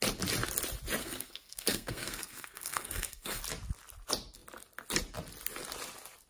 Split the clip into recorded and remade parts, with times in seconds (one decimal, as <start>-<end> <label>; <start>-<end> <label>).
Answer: 0.0-1.0 recorded; 1.0-3.4 remade; 3.4-6.3 recorded

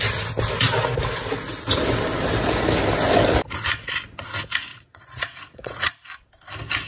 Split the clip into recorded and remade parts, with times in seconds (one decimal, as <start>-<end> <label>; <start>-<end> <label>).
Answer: 0.0-4.7 recorded; 4.7-5.8 remade; 5.8-6.9 recorded

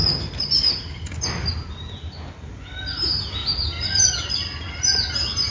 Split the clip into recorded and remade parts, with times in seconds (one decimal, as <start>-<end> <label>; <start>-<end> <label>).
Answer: 0.0-5.5 recorded

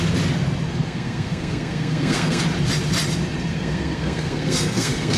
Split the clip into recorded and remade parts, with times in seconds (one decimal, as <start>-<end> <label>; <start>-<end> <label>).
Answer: 0.0-0.7 recorded; 0.7-2.4 remade; 2.4-3.5 recorded; 3.5-5.2 remade

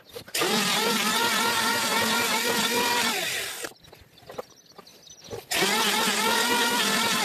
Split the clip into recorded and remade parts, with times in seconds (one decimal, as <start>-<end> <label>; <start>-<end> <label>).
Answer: 0.0-7.2 recorded

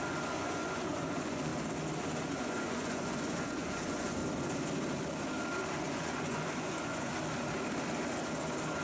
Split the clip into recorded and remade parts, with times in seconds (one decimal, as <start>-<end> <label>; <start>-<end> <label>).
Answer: 0.0-1.5 remade; 1.5-2.2 recorded; 2.2-4.2 remade; 4.2-5.7 recorded; 5.7-7.1 remade; 7.1-8.8 recorded

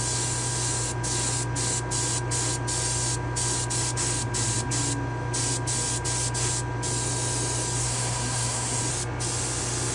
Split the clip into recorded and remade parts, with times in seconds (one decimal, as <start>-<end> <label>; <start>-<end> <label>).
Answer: 0.0-7.8 recorded; 7.8-8.8 remade; 8.8-9.9 recorded